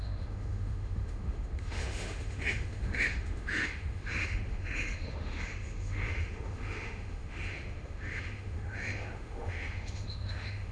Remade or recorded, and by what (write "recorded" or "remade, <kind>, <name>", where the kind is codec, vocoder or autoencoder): remade, autoencoder, DAC-VAE